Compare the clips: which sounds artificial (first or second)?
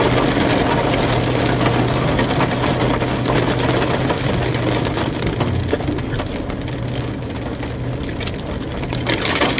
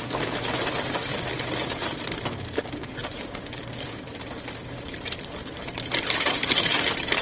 second